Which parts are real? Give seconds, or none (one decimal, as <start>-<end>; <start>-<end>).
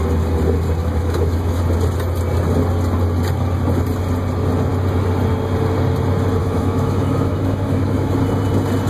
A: 0.0-0.8; 1.6-6.4; 8.2-8.9